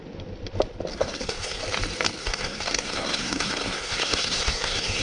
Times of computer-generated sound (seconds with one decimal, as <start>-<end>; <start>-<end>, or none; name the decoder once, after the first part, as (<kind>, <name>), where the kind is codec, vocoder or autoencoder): 0.9-1.6 (codec, SNAC); 2.2-5.0